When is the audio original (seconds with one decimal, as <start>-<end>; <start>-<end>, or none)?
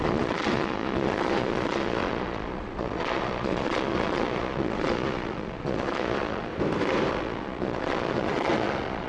6.5-7.1